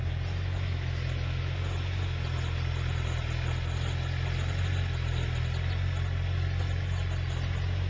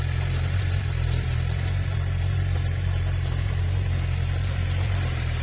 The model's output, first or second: second